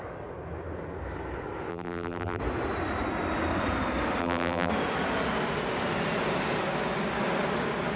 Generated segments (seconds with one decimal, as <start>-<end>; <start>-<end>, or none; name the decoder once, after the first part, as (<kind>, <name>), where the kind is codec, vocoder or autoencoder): 1.7-2.4 (vocoder, BigVGAN v2); 4.2-4.7